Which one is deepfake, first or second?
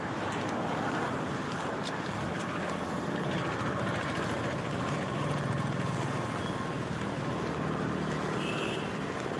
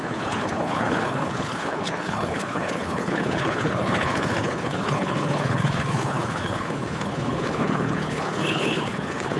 second